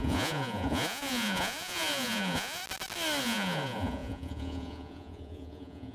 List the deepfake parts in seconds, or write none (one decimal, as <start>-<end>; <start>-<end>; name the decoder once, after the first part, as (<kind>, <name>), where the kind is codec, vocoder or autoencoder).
0.0-2.6 (vocoder, Vocos); 3.2-5.9